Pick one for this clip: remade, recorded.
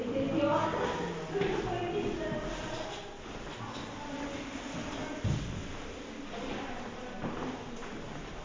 recorded